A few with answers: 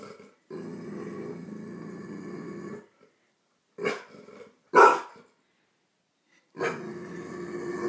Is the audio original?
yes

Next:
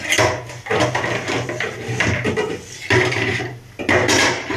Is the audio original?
yes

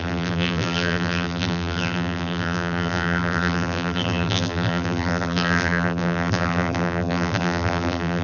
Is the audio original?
no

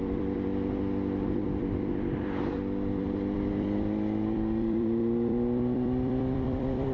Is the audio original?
no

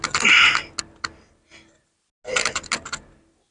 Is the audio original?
yes